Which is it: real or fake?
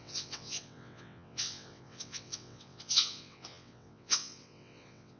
fake